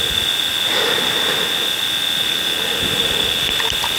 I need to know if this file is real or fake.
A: real